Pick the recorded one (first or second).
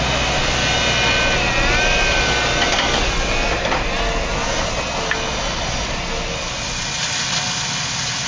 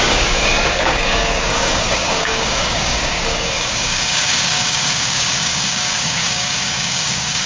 first